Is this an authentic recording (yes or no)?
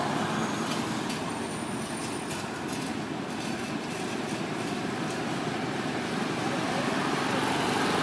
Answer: yes